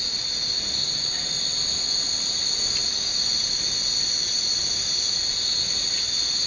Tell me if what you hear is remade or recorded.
recorded